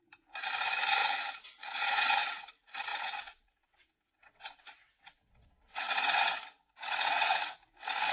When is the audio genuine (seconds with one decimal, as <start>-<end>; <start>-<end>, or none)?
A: 0.0-1.0; 2.5-2.9; 7.5-8.1